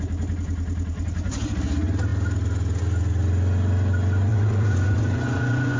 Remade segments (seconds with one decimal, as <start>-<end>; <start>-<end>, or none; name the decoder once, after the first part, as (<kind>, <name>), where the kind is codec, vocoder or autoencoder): 4.3-5.8 (vocoder, Vocos)